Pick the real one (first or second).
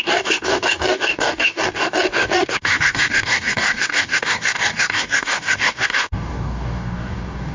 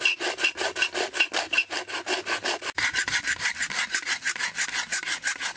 second